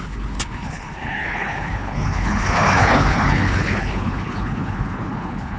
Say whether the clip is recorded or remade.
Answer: remade